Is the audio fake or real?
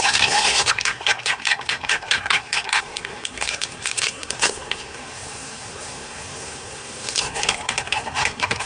fake